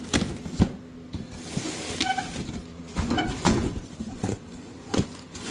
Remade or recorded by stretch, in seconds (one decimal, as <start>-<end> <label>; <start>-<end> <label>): 0.0-2.7 recorded; 2.7-5.5 remade